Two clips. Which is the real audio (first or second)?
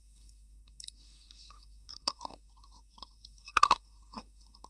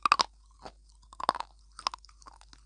second